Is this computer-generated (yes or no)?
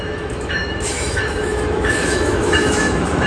yes